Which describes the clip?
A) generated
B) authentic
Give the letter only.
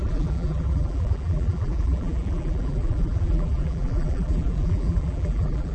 A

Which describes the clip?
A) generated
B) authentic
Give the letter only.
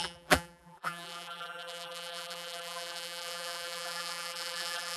A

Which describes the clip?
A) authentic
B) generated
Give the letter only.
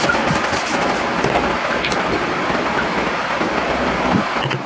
A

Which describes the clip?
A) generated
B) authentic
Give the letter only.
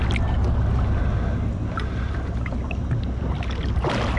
B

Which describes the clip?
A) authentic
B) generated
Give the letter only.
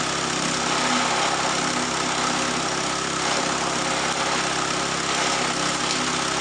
A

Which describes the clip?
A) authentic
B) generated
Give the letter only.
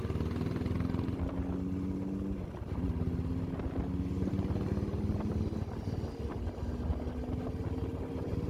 A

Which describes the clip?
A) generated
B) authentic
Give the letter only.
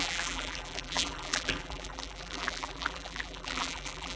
A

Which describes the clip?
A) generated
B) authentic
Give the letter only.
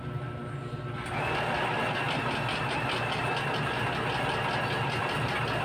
B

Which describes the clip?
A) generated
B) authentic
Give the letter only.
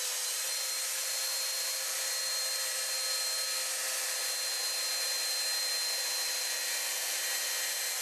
B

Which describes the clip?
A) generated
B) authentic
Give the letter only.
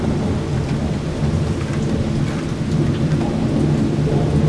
B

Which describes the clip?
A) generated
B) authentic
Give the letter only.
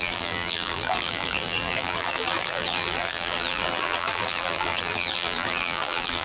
A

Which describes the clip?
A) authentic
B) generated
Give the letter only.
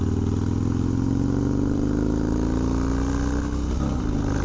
A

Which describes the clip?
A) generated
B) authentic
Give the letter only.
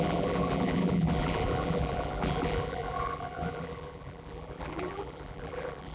A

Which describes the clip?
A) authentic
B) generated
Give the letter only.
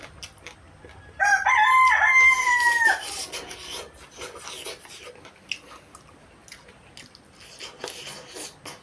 A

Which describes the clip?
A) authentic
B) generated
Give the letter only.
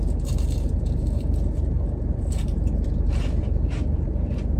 B